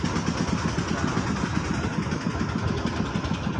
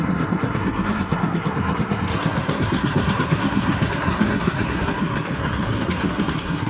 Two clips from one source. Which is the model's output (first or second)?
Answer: second